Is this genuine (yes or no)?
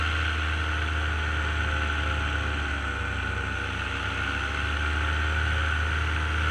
yes